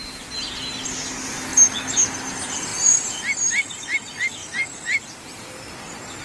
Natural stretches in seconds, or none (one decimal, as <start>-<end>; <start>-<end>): 0.0-1.5; 2.3-4.4; 5.4-6.2